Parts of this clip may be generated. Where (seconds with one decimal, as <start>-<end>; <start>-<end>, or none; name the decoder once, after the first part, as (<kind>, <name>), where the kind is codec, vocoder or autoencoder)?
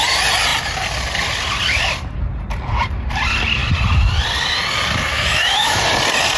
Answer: 5.1-5.8 (autoencoder, DAC-VAE)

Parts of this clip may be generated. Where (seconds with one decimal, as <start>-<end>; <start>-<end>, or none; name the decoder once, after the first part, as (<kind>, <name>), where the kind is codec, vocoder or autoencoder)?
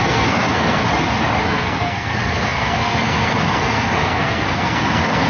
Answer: 0.0-0.8 (codec, SNAC); 1.4-5.3